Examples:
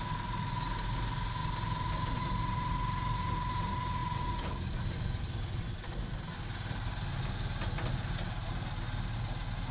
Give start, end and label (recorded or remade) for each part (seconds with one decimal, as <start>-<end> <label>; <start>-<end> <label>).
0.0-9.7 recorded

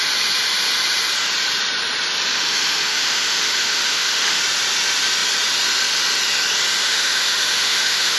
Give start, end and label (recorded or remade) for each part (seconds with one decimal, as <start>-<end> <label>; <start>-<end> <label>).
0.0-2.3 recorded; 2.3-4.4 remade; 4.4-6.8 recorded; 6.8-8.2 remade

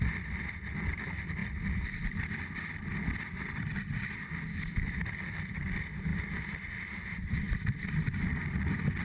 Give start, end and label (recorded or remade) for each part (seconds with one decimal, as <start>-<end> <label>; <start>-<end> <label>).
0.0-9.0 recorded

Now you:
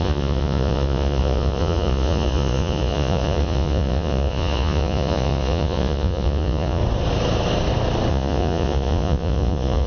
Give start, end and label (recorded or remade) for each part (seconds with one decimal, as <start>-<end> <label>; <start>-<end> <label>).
0.0-6.8 remade; 6.8-8.1 recorded; 8.1-9.9 remade

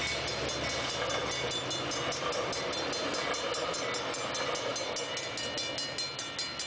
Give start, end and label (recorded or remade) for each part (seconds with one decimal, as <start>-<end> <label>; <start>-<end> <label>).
0.0-6.7 recorded

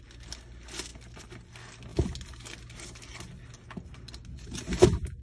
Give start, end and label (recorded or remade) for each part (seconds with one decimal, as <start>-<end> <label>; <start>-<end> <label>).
0.0-5.2 recorded

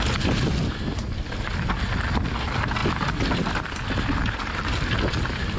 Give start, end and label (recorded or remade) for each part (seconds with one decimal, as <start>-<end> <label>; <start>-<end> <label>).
0.0-5.6 recorded